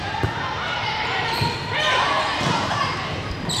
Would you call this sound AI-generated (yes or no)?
yes